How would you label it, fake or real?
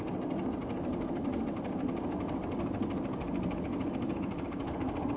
real